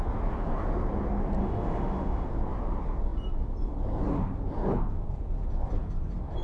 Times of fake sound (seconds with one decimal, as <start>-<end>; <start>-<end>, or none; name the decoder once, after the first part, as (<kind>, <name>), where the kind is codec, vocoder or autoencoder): 1.4-2.3 (autoencoder, DAC-VAE)